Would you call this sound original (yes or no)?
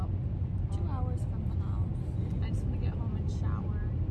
yes